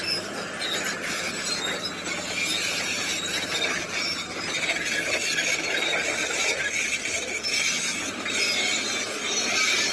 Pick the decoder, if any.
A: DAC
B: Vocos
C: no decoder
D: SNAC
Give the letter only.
C